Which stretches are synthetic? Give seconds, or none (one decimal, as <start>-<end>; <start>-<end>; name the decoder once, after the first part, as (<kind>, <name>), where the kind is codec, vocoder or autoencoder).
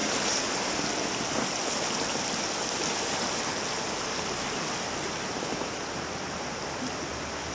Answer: none